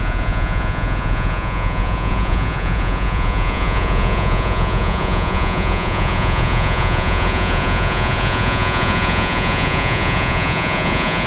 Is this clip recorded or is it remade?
remade